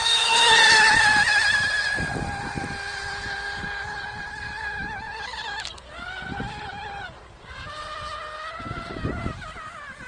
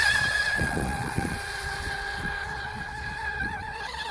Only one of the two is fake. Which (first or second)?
second